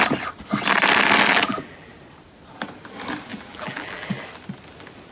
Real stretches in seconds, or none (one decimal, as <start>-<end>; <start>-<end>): 0.0-1.3; 1.9-3.3; 4.2-5.1